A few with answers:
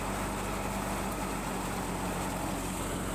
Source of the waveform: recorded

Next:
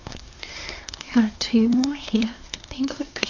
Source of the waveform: remade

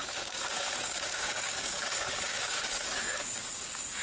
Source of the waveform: remade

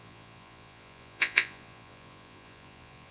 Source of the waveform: remade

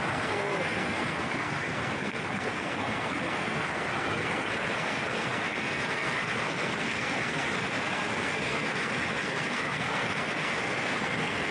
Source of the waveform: remade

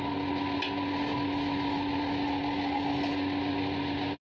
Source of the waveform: recorded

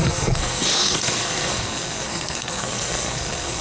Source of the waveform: remade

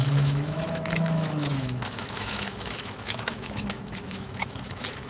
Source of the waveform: remade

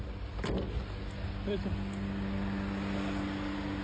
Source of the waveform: recorded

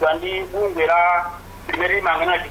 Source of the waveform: recorded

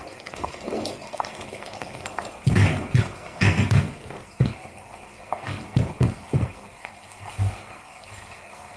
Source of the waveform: remade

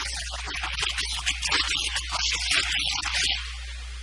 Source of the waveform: recorded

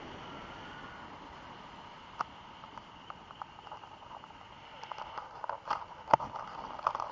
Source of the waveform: recorded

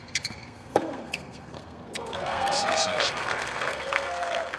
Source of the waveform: remade